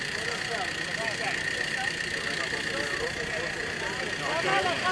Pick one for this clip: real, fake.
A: real